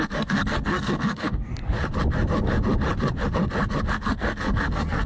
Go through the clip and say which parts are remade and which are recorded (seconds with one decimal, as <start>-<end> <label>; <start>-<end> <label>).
0.0-1.5 remade; 1.5-3.9 recorded; 3.9-5.1 remade